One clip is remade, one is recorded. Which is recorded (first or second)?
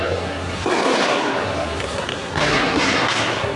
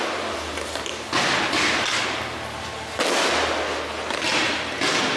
second